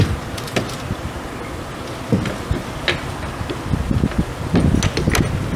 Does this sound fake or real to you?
real